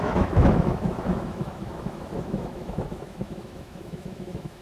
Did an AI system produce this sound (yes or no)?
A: yes